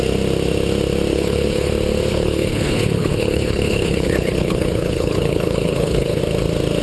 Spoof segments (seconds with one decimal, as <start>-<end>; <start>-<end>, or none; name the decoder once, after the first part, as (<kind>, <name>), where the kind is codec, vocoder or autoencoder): 1.1-1.7 (codec, HILCodec); 2.1-6.2